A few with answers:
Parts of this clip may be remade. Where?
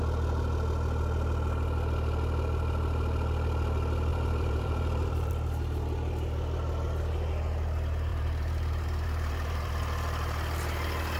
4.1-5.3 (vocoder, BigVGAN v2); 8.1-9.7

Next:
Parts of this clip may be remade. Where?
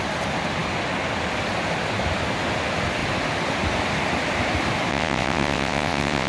4.9-6.3 (vocoder, WaveNeXt)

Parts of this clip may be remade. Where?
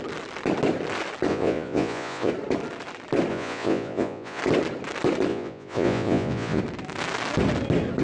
1.3-2.3 (vocoder, Vocos); 3.3-4.4; 5.3-6.6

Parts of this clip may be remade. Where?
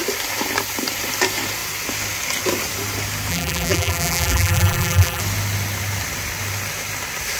3.3-5.2 (vocoder, BigVGAN v2)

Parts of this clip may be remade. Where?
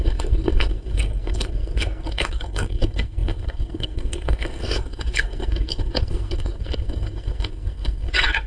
0.0-8.5 (codec, SNAC)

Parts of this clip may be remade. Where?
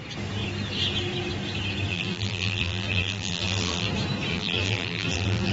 1.9-3.9 (vocoder, BigVGAN v2); 4.3-5.5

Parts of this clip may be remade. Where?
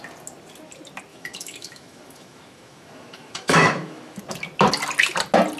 1.1-4.2 (autoencoder, DAC-VAE)